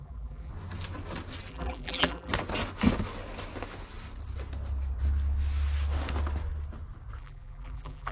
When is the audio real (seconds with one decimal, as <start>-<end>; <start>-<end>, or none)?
0.5-1.5; 2.3-7.2